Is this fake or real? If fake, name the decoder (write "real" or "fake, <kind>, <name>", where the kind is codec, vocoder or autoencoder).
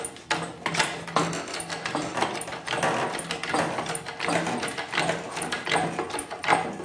real